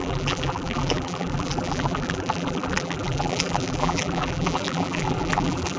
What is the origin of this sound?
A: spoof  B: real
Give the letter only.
A